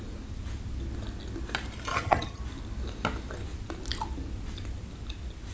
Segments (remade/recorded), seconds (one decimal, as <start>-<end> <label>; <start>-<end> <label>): 0.0-1.9 recorded; 1.9-2.4 remade; 2.4-5.5 recorded